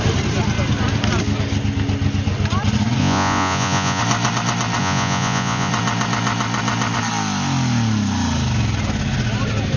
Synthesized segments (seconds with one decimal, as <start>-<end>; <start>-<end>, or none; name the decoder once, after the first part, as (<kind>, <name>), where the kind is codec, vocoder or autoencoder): 3.0-4.0 (vocoder, Vocos); 4.8-5.7